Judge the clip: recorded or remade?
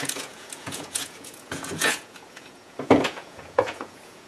remade